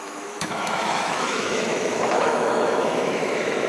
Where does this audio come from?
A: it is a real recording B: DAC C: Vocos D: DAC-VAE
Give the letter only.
D